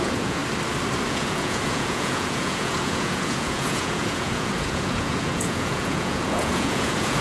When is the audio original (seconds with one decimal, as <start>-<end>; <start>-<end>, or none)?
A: 0.4-1.1